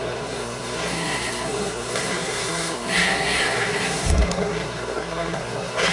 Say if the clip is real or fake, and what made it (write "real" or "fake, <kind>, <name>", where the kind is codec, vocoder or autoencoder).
fake, codec, SNAC